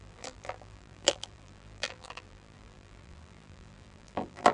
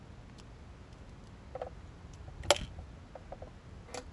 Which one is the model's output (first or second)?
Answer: first